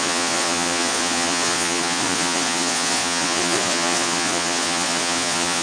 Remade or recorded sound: remade